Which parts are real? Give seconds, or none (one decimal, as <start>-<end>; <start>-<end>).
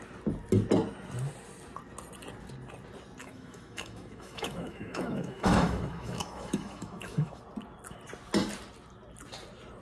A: 0.0-3.2; 7.4-9.8